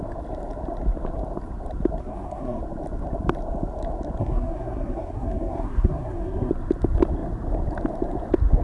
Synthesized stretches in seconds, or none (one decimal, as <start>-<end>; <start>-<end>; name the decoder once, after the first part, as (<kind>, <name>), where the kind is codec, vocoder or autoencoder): 2.0-2.6 (codec, SNAC); 4.2-6.5